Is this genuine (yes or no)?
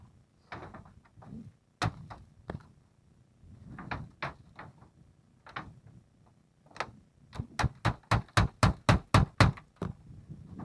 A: yes